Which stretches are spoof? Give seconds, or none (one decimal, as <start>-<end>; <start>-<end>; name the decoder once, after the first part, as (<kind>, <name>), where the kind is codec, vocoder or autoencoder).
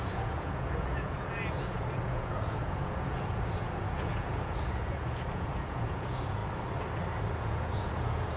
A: 0.0-6.4 (vocoder, Vocos); 7.3-8.4